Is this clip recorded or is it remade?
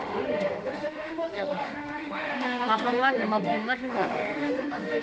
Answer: remade